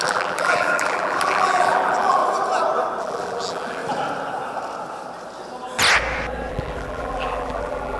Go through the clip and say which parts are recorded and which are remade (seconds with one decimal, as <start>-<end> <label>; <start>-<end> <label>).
0.0-2.2 remade; 2.2-3.0 recorded; 3.0-3.8 remade; 3.8-6.5 recorded; 6.5-8.0 remade